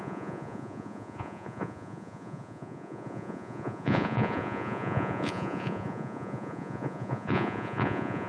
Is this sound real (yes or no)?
no